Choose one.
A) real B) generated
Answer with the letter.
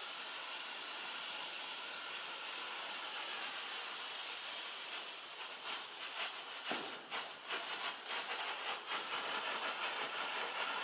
A